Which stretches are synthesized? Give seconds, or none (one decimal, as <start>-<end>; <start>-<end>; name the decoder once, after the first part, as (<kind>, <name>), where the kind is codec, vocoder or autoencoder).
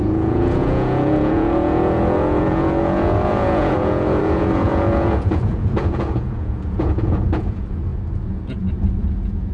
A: 0.0-9.5 (vocoder, Vocos)